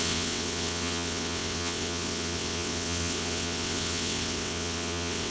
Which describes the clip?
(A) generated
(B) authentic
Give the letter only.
A